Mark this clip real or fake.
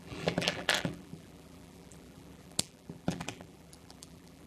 fake